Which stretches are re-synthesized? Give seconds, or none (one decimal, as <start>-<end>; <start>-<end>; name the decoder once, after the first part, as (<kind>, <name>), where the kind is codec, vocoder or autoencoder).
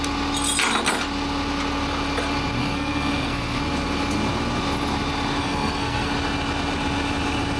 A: 2.6-3.6 (codec, SNAC); 5.4-6.1